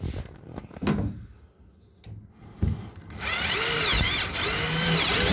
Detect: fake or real real